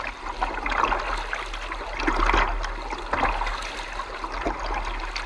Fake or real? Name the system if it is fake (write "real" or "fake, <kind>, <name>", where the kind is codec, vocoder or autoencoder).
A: real